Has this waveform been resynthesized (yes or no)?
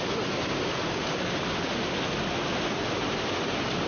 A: no